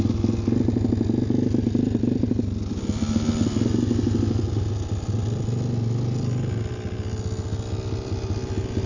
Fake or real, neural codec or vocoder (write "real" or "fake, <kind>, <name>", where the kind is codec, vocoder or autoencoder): real